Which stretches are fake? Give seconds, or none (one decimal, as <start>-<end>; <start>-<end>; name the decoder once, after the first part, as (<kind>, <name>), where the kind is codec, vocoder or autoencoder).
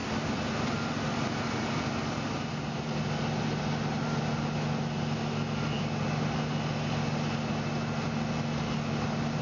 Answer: 0.0-2.5 (vocoder, BigVGAN v2)